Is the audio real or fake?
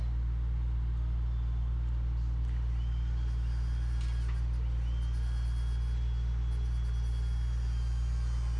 real